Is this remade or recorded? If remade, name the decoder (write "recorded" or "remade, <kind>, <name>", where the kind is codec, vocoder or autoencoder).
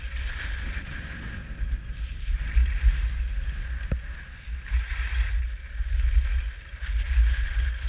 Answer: recorded